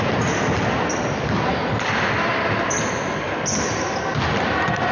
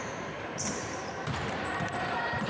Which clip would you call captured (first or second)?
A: first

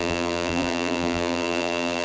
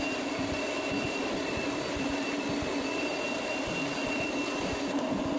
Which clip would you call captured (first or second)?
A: second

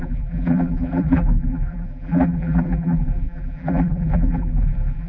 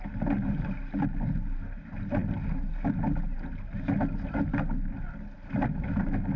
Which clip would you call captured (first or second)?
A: second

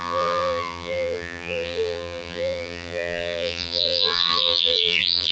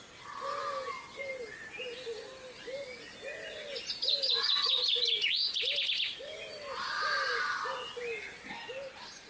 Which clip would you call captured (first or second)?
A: second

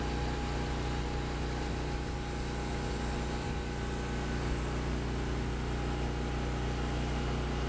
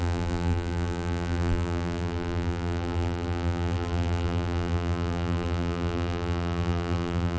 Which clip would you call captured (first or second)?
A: first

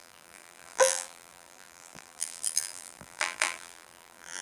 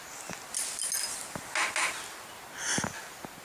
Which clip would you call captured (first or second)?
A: second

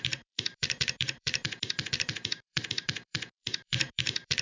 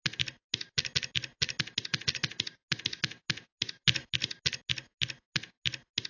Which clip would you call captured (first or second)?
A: second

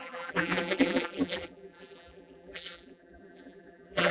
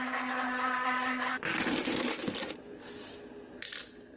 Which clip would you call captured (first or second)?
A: second